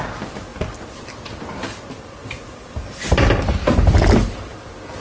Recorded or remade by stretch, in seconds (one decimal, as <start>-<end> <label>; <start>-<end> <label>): 0.0-5.0 recorded